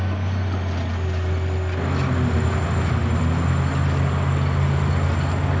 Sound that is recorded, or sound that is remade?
recorded